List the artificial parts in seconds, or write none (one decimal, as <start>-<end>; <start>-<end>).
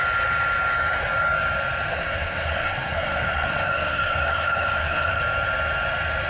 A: 1.9-5.2